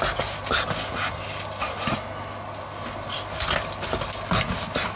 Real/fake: real